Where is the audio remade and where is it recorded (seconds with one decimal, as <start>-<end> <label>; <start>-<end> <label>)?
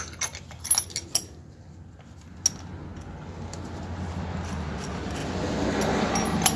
0.0-6.6 recorded